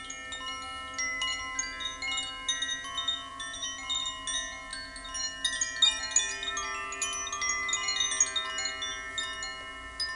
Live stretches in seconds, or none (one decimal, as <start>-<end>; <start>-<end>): 0.0-10.2